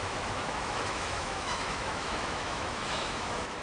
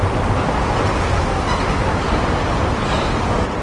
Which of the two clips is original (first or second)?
second